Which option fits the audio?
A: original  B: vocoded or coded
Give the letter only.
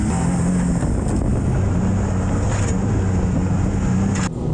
A